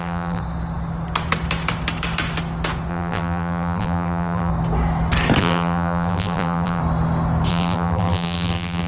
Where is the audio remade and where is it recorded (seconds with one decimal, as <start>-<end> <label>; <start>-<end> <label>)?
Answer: 0.0-0.4 remade; 0.4-2.9 recorded; 2.9-4.5 remade; 4.5-5.4 recorded; 5.4-6.8 remade; 6.8-7.5 recorded; 7.5-8.9 remade

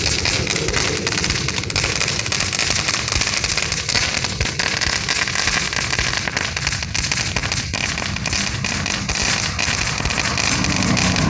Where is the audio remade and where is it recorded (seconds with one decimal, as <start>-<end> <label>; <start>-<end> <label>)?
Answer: 0.0-7.4 recorded; 7.4-10.0 remade; 10.0-11.3 recorded

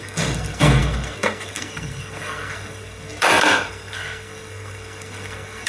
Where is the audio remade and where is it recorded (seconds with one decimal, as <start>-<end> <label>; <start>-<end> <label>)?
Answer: 0.0-5.7 remade

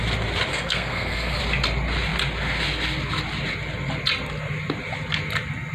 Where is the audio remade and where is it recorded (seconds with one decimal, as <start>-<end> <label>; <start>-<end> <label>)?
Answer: 0.0-0.5 recorded; 0.5-1.4 remade; 1.4-5.7 recorded

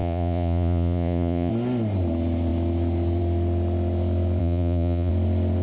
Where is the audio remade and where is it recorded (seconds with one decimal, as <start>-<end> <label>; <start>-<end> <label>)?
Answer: 0.0-1.5 remade; 1.5-4.4 recorded; 4.4-5.1 remade; 5.1-5.6 recorded

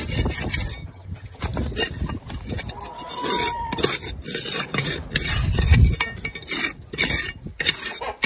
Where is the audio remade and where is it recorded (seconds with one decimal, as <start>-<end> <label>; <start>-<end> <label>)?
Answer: 0.0-0.8 recorded; 0.8-1.4 remade; 1.4-8.3 recorded